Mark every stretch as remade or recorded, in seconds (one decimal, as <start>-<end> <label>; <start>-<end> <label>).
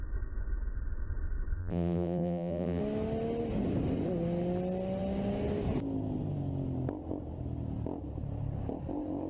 0.0-1.6 recorded; 1.6-2.8 remade; 2.8-9.3 recorded